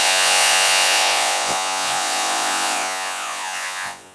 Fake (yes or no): yes